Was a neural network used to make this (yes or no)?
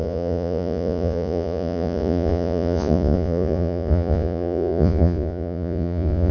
yes